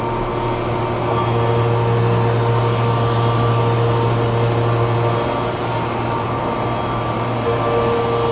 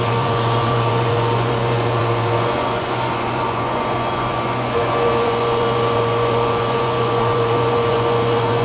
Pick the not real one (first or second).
second